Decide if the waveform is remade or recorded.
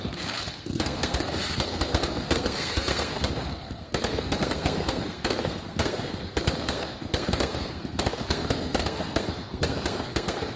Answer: remade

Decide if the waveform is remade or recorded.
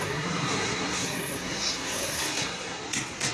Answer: remade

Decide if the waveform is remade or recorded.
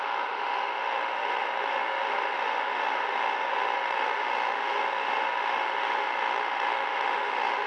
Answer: remade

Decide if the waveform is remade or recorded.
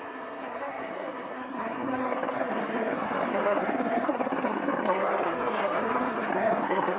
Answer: remade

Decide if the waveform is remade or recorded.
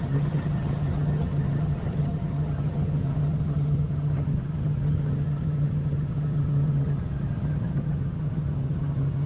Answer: remade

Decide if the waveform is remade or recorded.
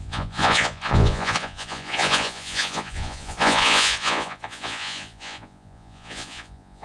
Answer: remade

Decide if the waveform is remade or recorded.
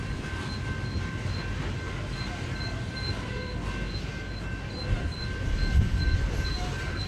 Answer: recorded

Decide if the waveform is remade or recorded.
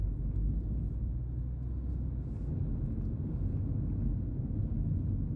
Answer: recorded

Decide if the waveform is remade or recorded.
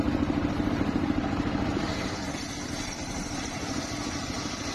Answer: remade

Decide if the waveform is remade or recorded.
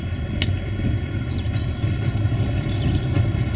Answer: recorded